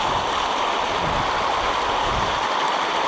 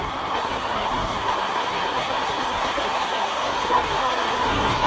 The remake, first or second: second